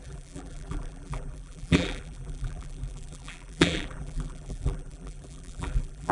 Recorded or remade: remade